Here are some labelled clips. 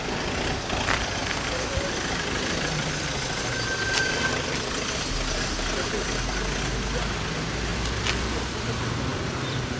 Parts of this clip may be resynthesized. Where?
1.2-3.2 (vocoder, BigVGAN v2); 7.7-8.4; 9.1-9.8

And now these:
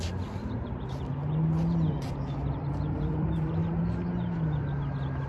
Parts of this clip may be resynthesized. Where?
2.4-3.8 (vocoder, BigVGAN v2)

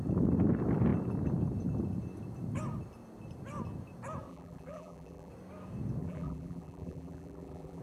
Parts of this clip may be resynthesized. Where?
4.3-5.3 (vocoder, BigVGAN v2); 6.0-7.8

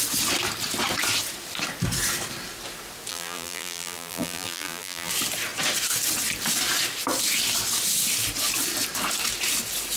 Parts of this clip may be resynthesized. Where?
3.1-5.1 (vocoder, BigVGAN v2)

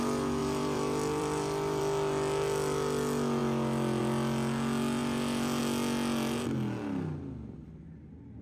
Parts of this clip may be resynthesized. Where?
0.4-1.8 (vocoder, BigVGAN v2); 5.0-5.6

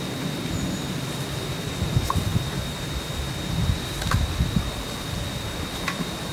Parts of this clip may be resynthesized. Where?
2.3-2.9 (vocoder, BigVGAN v2)